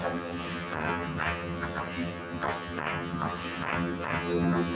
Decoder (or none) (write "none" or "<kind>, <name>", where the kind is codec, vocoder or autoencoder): vocoder, HiFi-GAN